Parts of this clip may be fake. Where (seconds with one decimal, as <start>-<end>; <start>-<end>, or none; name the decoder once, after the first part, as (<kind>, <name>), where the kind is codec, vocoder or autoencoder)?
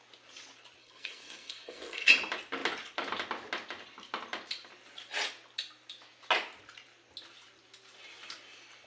0.8-2.1 (codec, SNAC)